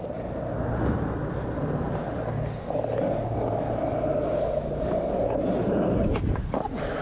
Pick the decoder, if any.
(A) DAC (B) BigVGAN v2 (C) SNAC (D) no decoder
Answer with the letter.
D